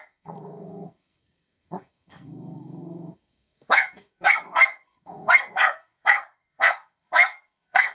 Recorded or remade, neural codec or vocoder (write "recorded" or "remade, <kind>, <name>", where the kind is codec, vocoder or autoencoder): remade, codec, SNAC